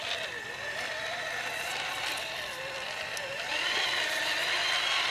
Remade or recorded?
recorded